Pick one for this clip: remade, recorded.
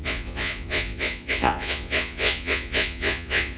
remade